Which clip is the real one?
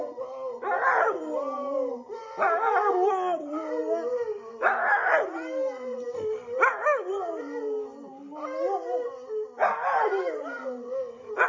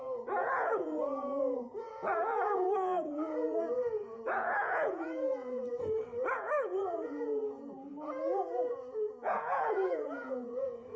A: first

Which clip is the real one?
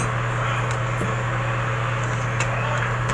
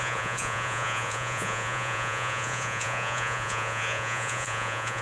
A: first